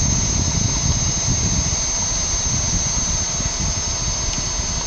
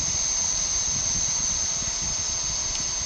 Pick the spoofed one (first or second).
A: second